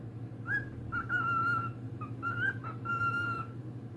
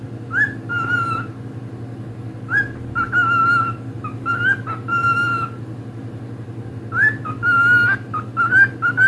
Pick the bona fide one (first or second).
second